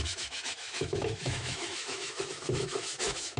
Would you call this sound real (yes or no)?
no